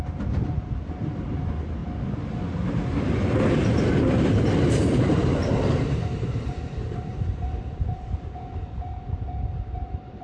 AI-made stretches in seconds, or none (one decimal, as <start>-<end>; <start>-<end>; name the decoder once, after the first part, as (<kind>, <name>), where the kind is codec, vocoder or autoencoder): 0.0-1.8 (vocoder, BigVGAN v2); 4.7-10.2